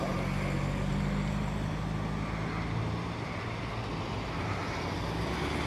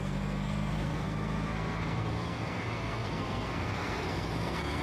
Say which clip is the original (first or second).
first